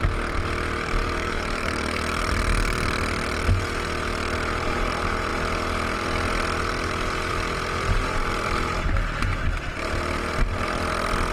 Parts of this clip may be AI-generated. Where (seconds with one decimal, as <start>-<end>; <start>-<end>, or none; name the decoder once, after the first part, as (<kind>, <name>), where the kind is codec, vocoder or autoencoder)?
1.0-2.3 (codec, DAC)